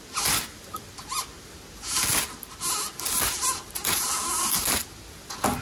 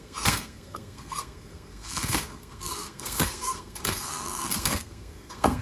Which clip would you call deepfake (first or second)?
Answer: second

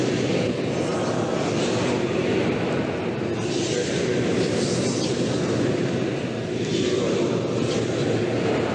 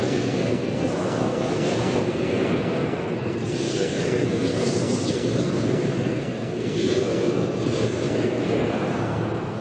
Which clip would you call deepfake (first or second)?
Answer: second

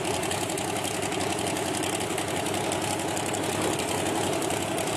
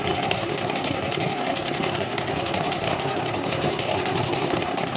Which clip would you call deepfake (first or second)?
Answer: second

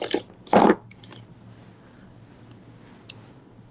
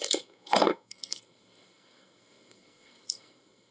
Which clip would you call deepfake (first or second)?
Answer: second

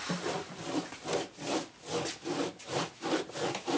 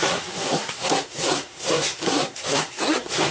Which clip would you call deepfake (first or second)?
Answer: second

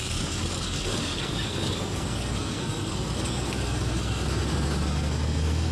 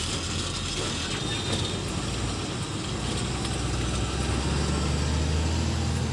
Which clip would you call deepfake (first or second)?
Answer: first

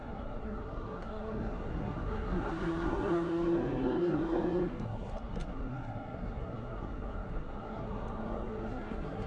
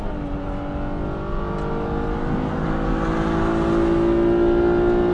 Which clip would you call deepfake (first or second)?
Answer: first